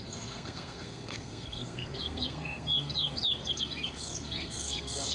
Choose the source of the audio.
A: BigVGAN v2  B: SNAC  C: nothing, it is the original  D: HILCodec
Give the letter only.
B